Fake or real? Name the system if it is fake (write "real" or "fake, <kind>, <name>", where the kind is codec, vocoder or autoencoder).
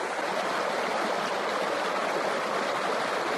real